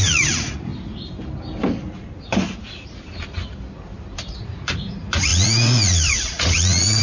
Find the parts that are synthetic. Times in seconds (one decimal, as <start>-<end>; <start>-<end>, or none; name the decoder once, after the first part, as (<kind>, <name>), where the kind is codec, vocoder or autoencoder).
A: 0.0-0.7 (vocoder, Vocos); 4.4-7.0